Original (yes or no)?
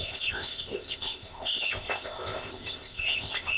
no